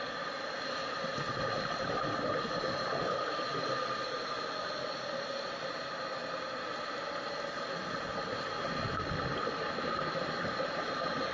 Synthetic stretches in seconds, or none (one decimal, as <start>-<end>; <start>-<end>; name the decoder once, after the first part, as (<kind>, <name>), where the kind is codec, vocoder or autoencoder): none